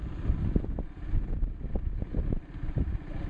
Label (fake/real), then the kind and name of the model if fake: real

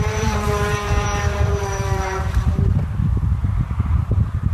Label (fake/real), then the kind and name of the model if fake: fake, vocoder, BigVGAN v2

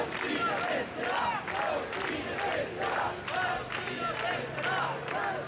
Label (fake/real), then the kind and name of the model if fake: real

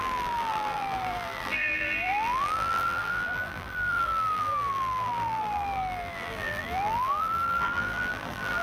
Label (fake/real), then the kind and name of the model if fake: fake, vocoder, BigVGAN v2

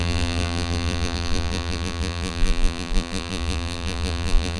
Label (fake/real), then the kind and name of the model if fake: fake, vocoder, BigVGAN v2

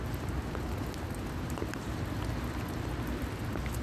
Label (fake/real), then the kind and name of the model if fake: real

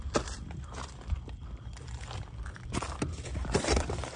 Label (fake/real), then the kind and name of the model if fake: fake, vocoder, BigVGAN v2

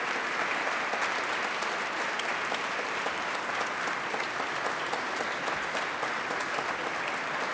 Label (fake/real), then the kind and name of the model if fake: real